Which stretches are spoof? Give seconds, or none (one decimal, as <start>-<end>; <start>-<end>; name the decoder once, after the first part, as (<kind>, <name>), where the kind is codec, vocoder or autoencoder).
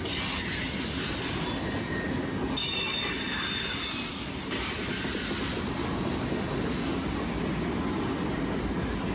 none